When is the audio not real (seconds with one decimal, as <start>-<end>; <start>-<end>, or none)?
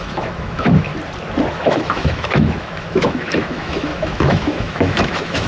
0.0-0.9; 1.5-5.5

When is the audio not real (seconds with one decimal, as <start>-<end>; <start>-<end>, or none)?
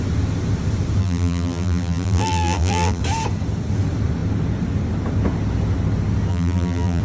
1.0-3.0; 6.3-7.0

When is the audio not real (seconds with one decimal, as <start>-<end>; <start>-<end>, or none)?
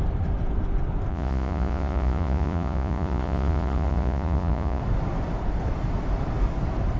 1.1-4.8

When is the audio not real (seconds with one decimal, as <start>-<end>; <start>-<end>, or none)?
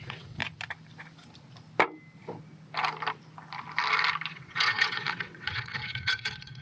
0.0-0.4; 4.3-6.6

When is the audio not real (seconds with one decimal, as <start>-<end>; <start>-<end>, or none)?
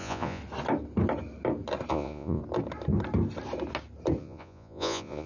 0.0-0.4; 1.9-2.4; 4.2-5.3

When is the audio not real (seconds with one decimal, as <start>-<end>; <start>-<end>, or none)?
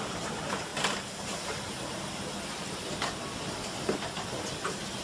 none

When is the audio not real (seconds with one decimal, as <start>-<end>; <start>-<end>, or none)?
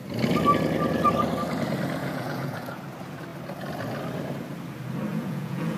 2.0-2.8; 5.1-5.8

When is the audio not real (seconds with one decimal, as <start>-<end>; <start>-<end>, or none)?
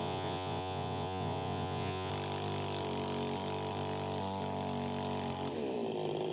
0.0-2.1